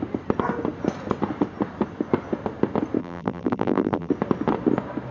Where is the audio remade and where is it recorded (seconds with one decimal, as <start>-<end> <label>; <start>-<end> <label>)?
0.0-3.0 recorded; 3.0-4.1 remade; 4.1-5.1 recorded